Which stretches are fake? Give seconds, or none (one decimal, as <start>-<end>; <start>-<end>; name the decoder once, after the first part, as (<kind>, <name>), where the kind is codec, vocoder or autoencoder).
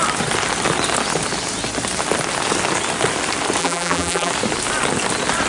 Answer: 3.6-4.3 (vocoder, BigVGAN v2)